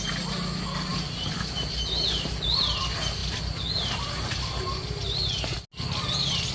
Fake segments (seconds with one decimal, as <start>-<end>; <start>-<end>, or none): 0.9-2.3; 3.2-4.6